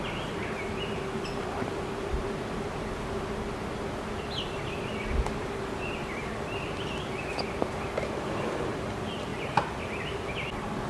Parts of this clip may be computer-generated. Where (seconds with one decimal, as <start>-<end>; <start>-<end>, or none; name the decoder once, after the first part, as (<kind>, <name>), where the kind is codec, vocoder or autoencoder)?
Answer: none